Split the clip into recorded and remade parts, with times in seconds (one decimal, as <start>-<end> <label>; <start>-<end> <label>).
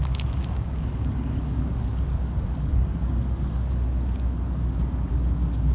0.0-5.7 remade